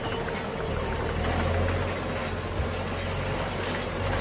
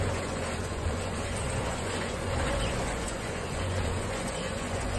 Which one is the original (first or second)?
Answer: first